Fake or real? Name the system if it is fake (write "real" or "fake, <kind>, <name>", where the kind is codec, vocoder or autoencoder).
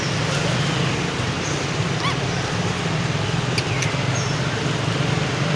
real